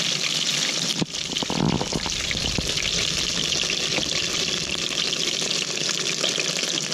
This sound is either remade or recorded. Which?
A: recorded